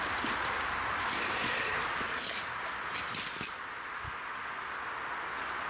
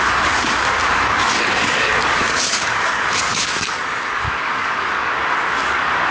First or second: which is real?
first